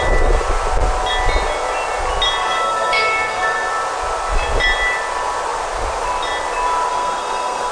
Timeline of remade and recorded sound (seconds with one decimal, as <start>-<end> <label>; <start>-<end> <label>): 0.0-2.4 recorded; 2.4-3.7 remade; 3.7-6.9 recorded; 6.9-7.7 remade